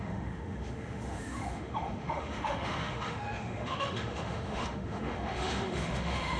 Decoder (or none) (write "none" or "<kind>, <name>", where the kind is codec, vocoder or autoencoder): autoencoder, DAC-VAE